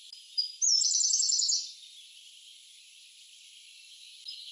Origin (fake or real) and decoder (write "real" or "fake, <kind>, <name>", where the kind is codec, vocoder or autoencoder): real